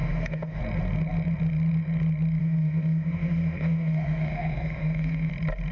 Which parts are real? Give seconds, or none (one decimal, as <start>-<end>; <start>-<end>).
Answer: 0.6-2.4; 5.3-5.7